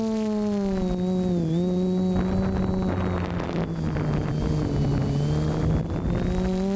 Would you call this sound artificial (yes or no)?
no